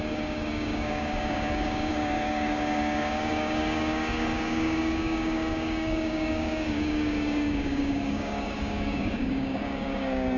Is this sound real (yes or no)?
no